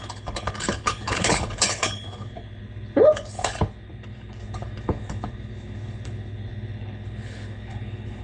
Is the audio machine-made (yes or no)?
yes